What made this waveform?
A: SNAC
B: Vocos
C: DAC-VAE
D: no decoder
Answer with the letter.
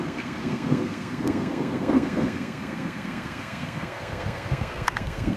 A